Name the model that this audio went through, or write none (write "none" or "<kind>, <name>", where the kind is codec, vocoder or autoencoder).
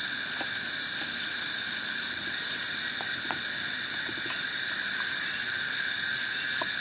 none